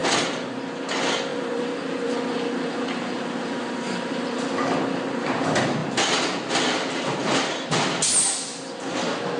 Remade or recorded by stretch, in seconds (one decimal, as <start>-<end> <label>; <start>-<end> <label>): 0.0-0.6 remade; 0.6-1.3 recorded; 1.3-4.5 remade; 4.5-9.4 recorded